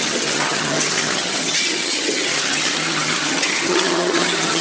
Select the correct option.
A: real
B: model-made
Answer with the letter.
B